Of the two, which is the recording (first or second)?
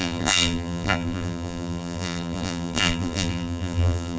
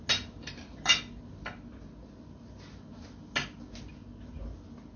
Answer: second